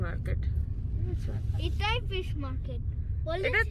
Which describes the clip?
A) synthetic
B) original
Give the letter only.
B